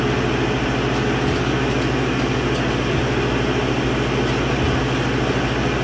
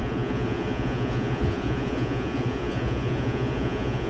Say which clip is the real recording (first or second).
first